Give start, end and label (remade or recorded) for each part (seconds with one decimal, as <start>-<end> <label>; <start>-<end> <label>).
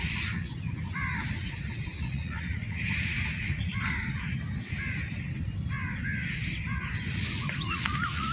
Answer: 0.0-0.5 remade; 0.5-2.0 recorded; 2.0-3.7 remade; 3.7-7.1 recorded; 7.1-8.3 remade